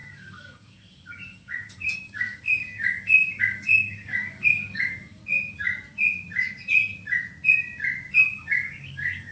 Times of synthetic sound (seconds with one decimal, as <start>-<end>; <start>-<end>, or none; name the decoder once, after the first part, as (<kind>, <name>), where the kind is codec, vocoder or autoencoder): 0.0-5.2 (codec, DAC); 8.1-9.3